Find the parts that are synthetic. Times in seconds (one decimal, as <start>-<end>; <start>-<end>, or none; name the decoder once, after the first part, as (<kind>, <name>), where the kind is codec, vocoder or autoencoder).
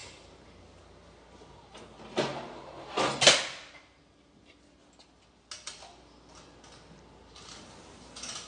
none